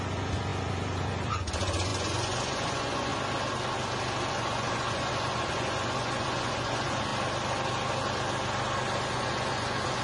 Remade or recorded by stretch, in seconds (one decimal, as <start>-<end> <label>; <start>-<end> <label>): 0.0-3.1 remade; 3.1-4.3 recorded; 4.3-7.1 remade; 7.1-9.0 recorded; 9.0-10.0 remade